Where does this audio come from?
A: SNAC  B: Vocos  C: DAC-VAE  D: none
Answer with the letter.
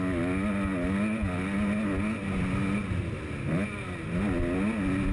D